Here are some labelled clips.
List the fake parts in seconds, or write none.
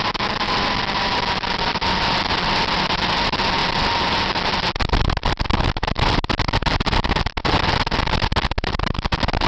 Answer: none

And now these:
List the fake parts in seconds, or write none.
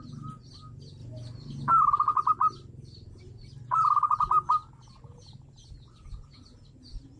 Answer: none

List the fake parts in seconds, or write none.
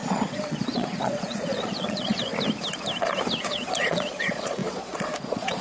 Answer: 0.0-2.3; 3.4-5.6